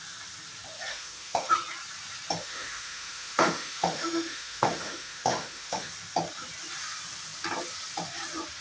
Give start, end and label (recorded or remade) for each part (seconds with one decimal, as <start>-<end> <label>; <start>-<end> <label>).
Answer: 0.0-0.9 recorded; 0.9-1.5 remade; 1.5-2.4 recorded; 2.4-5.9 remade; 5.9-8.6 recorded